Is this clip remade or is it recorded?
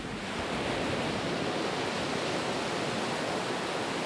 recorded